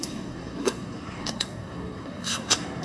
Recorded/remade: remade